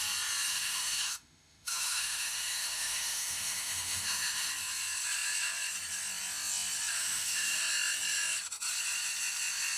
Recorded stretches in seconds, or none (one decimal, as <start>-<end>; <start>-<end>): 0.0-0.5; 4.5-7.0; 7.6-9.8